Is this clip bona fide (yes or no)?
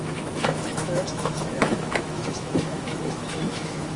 no